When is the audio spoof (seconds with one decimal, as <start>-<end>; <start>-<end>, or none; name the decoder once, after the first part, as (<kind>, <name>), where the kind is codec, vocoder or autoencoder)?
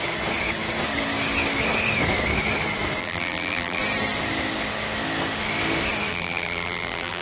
3.0-3.8 (vocoder, BigVGAN v2); 6.1-7.2